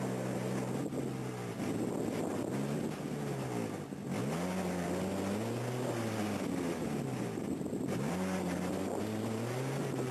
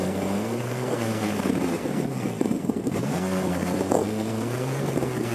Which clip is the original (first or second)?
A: first